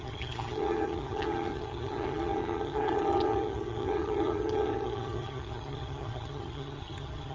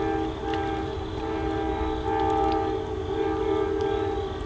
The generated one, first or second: first